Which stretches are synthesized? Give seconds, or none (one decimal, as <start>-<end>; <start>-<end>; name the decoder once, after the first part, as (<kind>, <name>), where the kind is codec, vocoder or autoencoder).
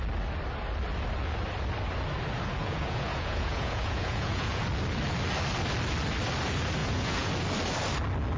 2.6-4.6 (vocoder, Vocos); 6.8-7.3